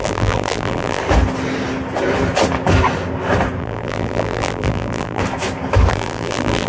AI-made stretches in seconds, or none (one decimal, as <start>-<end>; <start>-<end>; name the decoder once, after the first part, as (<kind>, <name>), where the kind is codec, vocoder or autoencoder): 0.0-1.0 (vocoder, BigVGAN v2); 3.6-5.2; 5.9-6.7